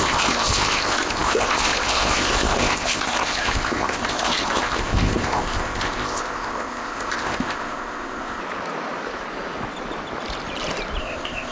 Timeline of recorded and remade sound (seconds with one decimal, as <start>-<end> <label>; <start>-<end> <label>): 0.0-8.4 remade; 8.4-11.0 recorded; 11.0-11.5 remade